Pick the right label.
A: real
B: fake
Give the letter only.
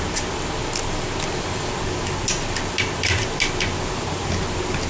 A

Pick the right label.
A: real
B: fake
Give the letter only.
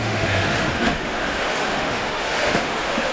B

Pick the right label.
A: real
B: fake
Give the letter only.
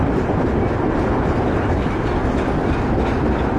A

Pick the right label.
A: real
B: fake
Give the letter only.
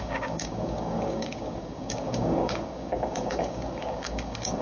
B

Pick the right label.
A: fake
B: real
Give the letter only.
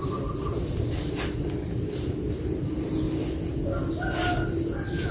B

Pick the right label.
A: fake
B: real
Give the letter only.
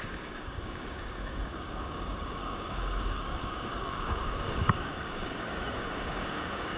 A